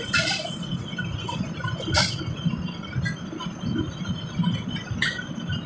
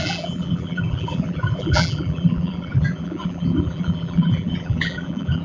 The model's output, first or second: second